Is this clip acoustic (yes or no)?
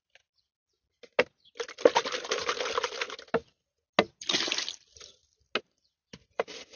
yes